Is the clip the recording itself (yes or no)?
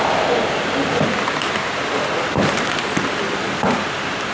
no